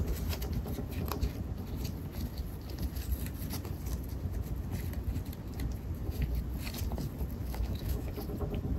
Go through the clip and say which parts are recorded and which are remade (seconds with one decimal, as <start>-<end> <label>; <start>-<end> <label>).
0.0-7.4 recorded; 7.4-8.1 remade; 8.1-8.8 recorded